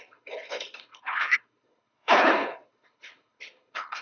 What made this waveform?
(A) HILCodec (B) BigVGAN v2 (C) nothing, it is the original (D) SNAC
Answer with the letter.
A